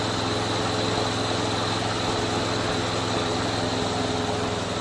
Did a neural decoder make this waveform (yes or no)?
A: no